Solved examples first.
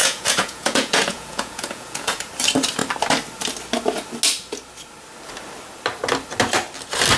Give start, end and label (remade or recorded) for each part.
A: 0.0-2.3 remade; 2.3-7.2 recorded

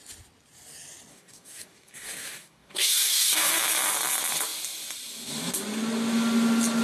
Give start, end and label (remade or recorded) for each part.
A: 0.0-1.1 recorded; 1.1-3.5 remade; 3.5-6.8 recorded

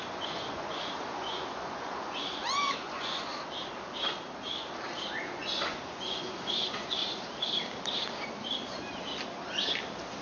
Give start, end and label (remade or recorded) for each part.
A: 0.0-3.3 remade; 3.3-5.2 recorded; 5.2-7.0 remade; 7.0-10.2 recorded

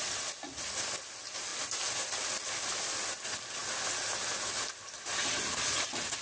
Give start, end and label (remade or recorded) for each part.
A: 0.0-6.2 recorded